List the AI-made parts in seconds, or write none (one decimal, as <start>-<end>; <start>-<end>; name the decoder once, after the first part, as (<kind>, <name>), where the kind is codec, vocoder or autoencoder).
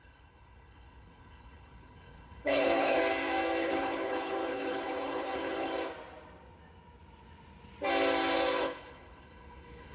0.0-3.0 (codec, HILCodec); 3.6-5.7; 8.6-9.9